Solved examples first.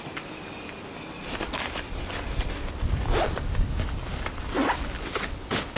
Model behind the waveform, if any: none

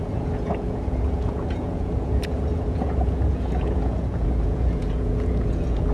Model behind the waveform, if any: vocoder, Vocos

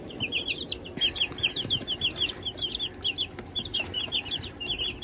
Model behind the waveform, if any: none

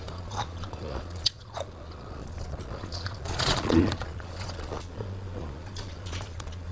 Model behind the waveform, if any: vocoder, Vocos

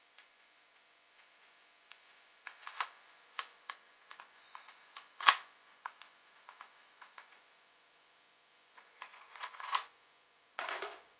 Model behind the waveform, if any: vocoder, Vocos